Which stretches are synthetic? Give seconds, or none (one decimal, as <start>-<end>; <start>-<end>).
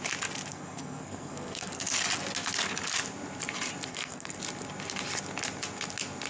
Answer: 0.5-1.9; 3.9-4.4